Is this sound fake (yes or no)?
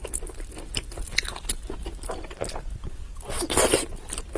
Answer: no